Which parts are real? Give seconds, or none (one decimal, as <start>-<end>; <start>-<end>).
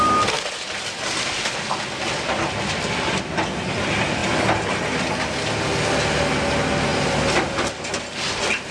0.0-8.7